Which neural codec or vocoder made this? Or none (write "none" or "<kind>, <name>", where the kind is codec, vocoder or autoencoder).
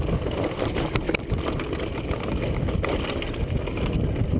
none